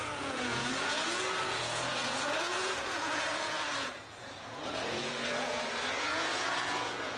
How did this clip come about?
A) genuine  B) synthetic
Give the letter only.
B